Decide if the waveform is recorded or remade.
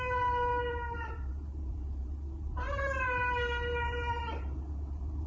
recorded